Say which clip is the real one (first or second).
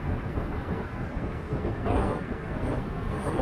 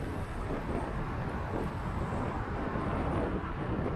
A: second